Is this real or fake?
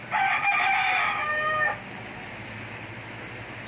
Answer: real